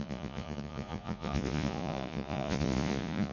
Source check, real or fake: fake